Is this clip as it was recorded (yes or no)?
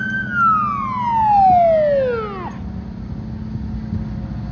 yes